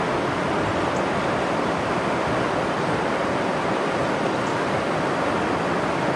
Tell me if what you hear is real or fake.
real